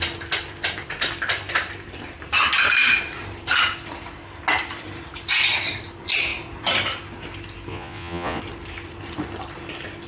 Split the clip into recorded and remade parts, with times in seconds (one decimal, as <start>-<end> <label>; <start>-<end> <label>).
0.0-7.7 recorded; 7.7-8.4 remade; 8.4-10.1 recorded